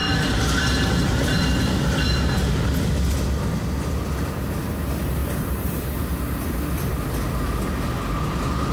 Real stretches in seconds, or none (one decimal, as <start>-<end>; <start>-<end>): 4.3-5.2; 6.0-8.7